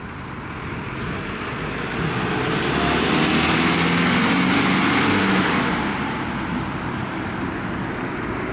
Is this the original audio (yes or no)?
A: yes